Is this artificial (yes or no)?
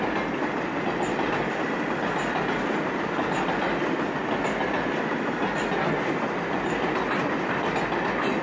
no